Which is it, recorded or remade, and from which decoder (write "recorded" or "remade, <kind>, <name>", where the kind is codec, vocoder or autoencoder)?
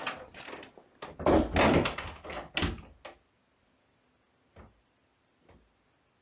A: recorded